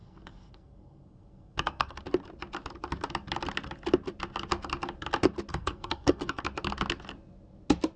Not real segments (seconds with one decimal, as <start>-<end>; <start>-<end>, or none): 0.0-2.0; 5.5-6.4